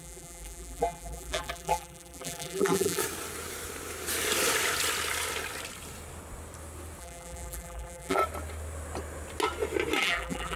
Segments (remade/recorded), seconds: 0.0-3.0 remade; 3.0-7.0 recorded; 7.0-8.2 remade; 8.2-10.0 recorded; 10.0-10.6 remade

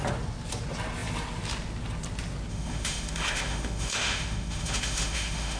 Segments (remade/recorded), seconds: 0.0-2.5 recorded; 2.5-5.6 remade

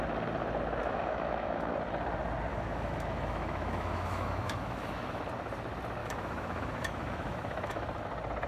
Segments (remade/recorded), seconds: 0.0-0.8 recorded; 0.8-1.7 remade; 1.7-2.5 recorded; 2.5-5.2 remade; 5.2-6.0 recorded; 6.0-8.0 remade; 8.0-8.5 recorded

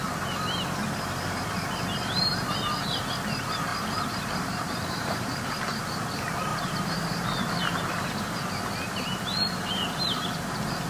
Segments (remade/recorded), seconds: 0.0-3.7 recorded; 3.7-5.8 remade; 5.8-6.5 recorded; 6.5-7.6 remade; 7.6-10.9 recorded